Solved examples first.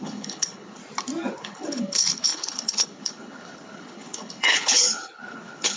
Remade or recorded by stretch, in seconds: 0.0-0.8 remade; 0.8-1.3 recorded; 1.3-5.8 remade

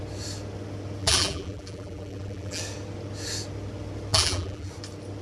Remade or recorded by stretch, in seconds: 0.0-1.0 recorded; 1.0-2.6 remade; 2.6-4.1 recorded; 4.1-4.7 remade; 4.7-5.2 recorded

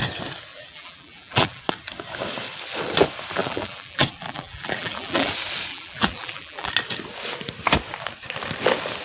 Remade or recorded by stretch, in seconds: 0.0-0.5 recorded; 0.5-1.6 remade; 1.6-3.4 recorded; 3.4-5.3 remade; 5.3-5.7 recorded; 5.7-6.7 remade; 6.7-9.0 recorded

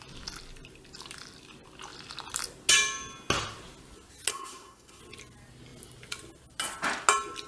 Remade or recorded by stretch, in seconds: 0.0-4.3 recorded; 4.3-5.0 remade; 5.0-7.5 recorded

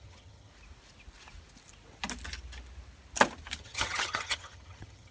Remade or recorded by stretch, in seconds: 0.0-0.5 remade; 0.5-3.6 recorded; 3.6-5.1 remade

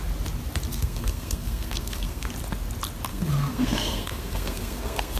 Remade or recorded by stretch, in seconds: 0.0-0.7 recorded; 0.7-2.3 remade; 2.3-3.1 recorded; 3.1-5.2 remade

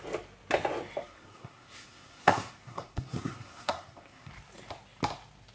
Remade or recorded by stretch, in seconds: 0.0-1.0 recorded; 1.0-4.3 remade; 4.3-5.5 recorded

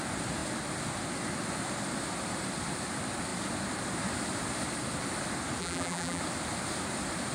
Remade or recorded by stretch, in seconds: 0.0-5.6 recorded; 5.6-6.2 remade; 6.2-7.3 recorded